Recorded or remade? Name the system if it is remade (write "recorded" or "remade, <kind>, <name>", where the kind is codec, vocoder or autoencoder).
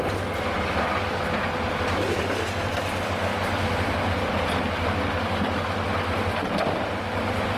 recorded